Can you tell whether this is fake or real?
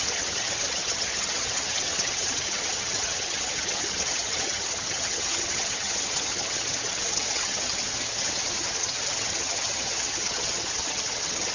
fake